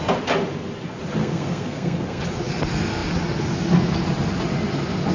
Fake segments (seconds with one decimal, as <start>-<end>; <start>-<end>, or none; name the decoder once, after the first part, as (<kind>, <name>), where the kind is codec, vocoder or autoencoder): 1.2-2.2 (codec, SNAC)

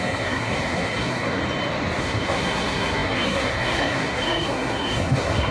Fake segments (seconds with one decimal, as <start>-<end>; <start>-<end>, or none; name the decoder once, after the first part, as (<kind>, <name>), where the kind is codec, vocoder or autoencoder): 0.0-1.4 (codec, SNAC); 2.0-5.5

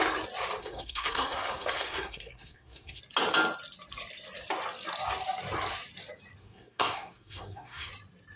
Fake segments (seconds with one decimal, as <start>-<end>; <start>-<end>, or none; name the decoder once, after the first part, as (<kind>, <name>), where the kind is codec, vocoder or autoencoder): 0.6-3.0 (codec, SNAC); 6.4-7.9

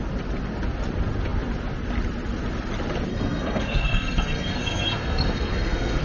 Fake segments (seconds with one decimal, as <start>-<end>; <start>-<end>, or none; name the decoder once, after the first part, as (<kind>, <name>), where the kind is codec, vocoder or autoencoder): 3.1-6.0 (codec, SNAC)

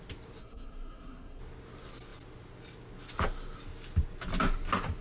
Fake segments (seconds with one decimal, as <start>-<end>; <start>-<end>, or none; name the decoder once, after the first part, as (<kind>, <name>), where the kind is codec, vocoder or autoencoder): 0.4-1.4 (codec, SNAC)

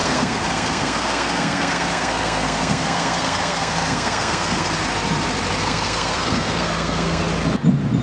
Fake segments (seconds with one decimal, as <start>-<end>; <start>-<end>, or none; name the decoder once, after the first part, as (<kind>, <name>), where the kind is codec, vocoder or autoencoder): 0.0-4.7 (codec, SNAC); 5.6-7.2

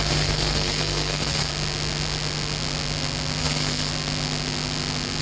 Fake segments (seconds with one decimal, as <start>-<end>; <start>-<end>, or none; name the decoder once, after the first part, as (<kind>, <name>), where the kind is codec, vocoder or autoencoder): 0.0-1.5 (codec, SNAC); 3.4-3.9

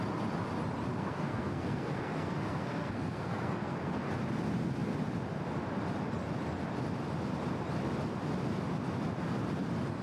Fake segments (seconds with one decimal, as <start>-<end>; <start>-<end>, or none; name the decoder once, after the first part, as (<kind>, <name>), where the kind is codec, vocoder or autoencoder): 0.9-4.1 (codec, SNAC)